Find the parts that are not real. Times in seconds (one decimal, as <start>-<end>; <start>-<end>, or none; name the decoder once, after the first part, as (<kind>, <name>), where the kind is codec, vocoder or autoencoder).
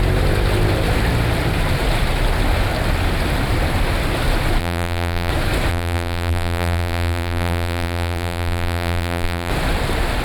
4.6-5.3 (vocoder, BigVGAN v2); 5.7-9.5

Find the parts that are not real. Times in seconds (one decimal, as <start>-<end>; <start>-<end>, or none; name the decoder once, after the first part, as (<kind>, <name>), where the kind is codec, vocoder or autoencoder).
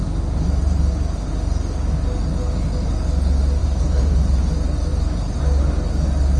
0.6-1.3 (vocoder, BigVGAN v2); 3.6-4.4; 4.9-5.4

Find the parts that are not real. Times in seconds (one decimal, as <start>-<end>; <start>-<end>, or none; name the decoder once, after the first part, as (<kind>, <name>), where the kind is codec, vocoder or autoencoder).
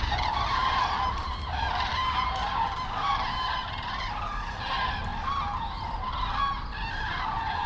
0.0-5.1 (vocoder, BigVGAN v2); 6.9-7.7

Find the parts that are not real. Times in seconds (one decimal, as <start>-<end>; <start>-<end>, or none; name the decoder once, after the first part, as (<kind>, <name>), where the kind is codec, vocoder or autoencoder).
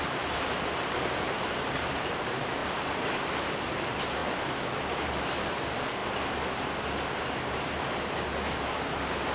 0.0-4.2 (vocoder, BigVGAN v2); 4.9-6.0; 7.4-9.3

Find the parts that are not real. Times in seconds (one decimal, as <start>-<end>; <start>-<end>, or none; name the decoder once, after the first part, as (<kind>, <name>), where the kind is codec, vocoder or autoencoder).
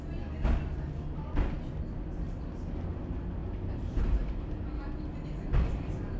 3.4-4.5 (vocoder, BigVGAN v2)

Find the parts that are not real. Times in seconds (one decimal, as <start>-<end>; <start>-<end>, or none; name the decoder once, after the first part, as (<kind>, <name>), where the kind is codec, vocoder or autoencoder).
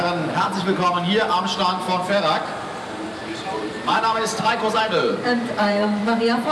3.2-6.0 (vocoder, BigVGAN v2)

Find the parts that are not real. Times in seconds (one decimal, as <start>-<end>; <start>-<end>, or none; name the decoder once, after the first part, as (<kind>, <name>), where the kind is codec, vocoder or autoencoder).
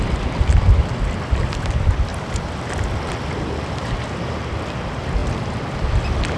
2.1-2.7 (vocoder, BigVGAN v2)